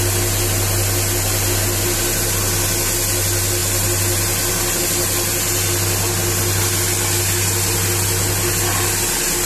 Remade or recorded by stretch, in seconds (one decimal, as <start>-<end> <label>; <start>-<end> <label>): 0.0-9.5 recorded